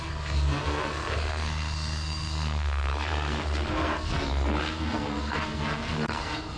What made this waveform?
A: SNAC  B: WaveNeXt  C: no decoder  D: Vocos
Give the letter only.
A